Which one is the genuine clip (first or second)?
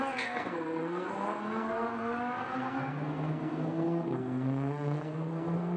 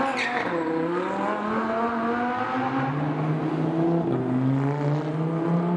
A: second